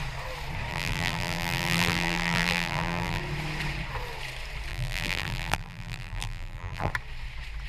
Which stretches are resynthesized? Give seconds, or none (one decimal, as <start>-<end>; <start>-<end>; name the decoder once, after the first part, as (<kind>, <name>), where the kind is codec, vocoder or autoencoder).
0.7-3.2 (vocoder, BigVGAN v2); 4.7-6.9